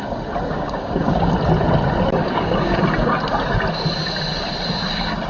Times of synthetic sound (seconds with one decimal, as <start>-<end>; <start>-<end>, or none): 0.5-1.3; 2.2-2.8